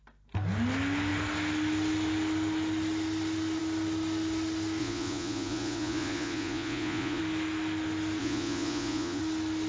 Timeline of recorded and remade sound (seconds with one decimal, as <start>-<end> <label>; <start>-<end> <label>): 0.0-4.8 recorded; 4.8-7.2 remade; 7.2-8.2 recorded; 8.2-9.2 remade; 9.2-9.7 recorded